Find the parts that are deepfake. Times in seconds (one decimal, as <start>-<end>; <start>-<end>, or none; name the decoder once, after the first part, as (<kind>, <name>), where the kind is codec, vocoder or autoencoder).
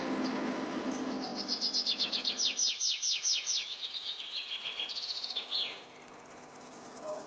none